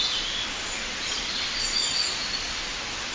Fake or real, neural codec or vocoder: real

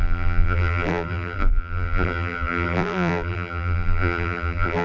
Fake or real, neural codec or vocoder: fake, vocoder, BigVGAN v2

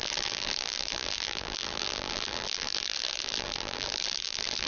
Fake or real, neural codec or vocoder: fake, vocoder, BigVGAN v2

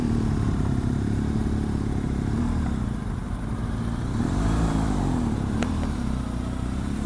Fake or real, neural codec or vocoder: fake, vocoder, BigVGAN v2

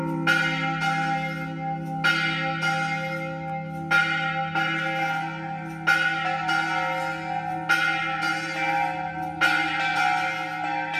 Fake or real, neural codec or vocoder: real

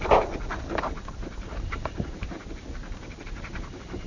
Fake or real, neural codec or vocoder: fake, vocoder, BigVGAN v2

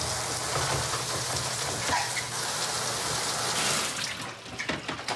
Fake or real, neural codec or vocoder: real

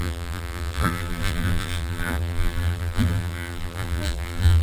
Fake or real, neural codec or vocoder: fake, vocoder, BigVGAN v2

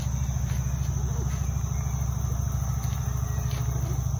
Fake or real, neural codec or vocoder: real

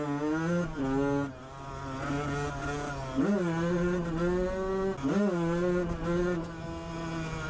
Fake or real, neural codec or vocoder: real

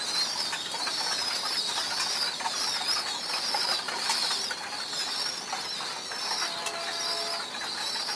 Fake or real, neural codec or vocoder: real